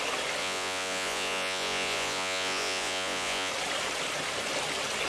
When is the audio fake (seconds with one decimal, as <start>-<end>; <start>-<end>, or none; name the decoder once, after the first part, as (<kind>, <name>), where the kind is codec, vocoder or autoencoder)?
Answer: 0.4-3.5 (vocoder, Vocos)